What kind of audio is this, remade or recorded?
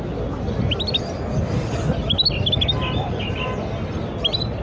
recorded